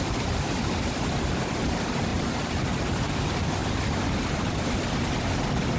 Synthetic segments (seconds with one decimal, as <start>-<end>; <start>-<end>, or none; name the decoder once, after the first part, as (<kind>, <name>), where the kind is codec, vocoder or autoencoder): 2.1-3.1 (vocoder, BigVGAN v2)